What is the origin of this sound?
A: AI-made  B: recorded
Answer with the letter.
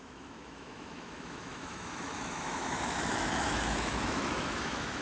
A